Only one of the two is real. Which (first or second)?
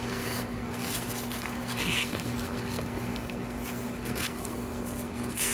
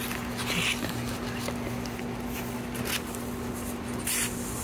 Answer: second